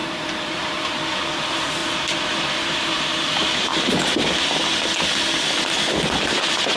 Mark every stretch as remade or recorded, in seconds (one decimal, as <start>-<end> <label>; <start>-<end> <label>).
0.0-1.8 remade; 1.8-2.3 recorded; 2.3-3.7 remade; 3.7-6.2 recorded; 6.2-6.8 remade